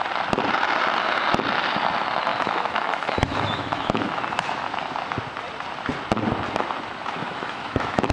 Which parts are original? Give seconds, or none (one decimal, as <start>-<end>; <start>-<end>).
0.0-2.3; 4.2-7.2